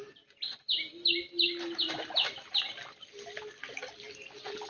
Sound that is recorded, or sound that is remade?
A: recorded